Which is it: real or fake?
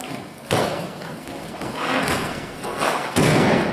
fake